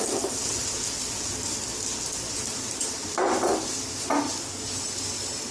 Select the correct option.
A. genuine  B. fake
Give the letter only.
A